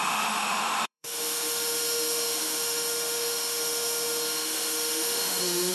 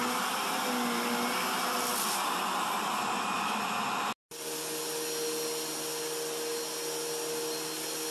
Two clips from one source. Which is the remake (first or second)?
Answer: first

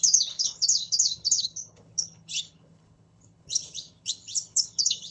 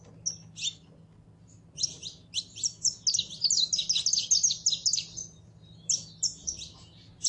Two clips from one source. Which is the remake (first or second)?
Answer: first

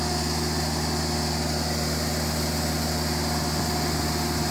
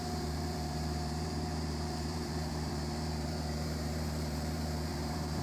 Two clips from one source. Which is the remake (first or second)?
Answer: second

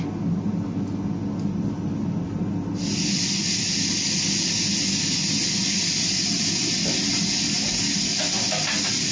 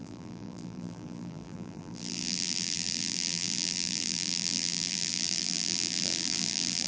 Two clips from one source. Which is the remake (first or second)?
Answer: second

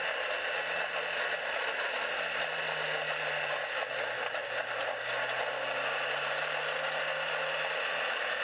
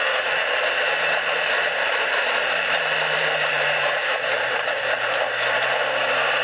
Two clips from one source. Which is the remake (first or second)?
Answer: second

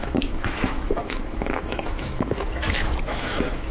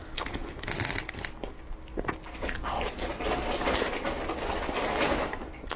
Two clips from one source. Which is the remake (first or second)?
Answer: first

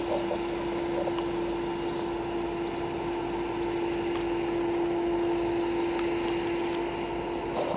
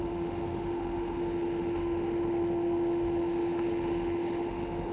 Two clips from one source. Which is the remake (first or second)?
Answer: second